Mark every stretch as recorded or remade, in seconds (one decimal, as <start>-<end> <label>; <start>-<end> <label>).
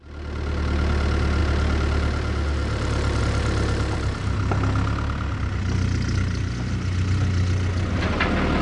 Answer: 0.0-8.6 recorded